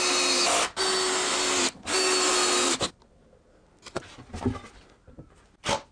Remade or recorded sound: recorded